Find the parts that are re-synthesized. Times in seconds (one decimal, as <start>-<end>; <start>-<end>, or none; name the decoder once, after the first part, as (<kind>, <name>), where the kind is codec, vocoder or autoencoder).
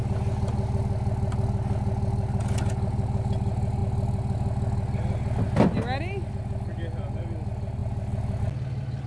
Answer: none